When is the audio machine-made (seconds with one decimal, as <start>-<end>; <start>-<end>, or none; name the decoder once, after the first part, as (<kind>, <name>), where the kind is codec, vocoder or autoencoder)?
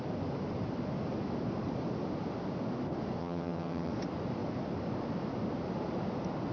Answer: 3.2-3.9 (vocoder, HiFi-GAN)